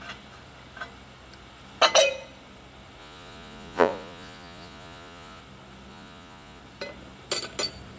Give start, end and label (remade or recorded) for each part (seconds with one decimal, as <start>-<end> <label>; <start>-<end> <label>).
0.0-3.0 recorded; 3.0-5.4 remade; 5.4-5.9 recorded; 5.9-6.6 remade; 6.6-8.0 recorded